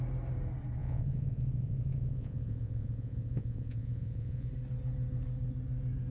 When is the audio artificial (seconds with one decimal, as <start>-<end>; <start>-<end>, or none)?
0.8-4.5

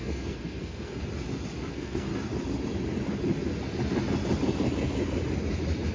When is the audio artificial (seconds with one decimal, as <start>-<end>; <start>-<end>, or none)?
0.0-1.0; 1.7-2.1

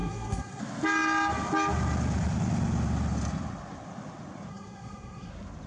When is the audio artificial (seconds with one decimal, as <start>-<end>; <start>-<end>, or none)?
0.0-0.6; 4.5-5.3

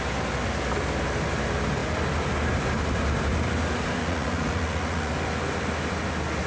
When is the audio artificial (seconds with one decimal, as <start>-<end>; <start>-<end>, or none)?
4.0-5.1

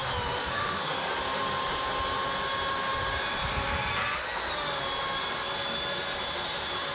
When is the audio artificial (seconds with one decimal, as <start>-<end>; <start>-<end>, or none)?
0.4-1.1

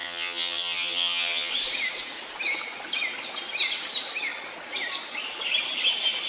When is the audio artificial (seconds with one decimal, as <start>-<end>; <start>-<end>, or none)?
0.0-1.5

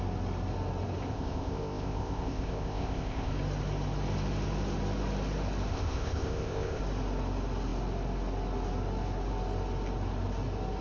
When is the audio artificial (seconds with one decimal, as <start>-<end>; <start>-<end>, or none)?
1.1-3.3; 5.7-6.8